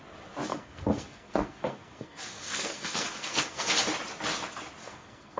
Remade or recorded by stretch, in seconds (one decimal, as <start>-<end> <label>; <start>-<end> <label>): 0.0-0.5 recorded; 0.5-3.7 remade; 3.7-4.8 recorded; 4.8-5.4 remade